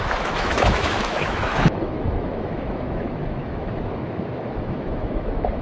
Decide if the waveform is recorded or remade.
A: remade